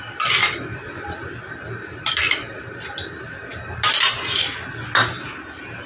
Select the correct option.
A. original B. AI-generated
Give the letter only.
A